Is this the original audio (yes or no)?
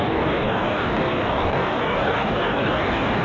no